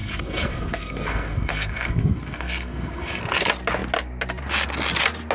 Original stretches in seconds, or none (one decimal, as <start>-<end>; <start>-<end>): 3.2-5.3